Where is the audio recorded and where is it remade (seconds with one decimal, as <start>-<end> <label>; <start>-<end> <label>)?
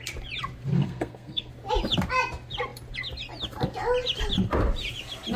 0.0-0.7 recorded; 0.7-1.5 remade; 1.5-5.4 recorded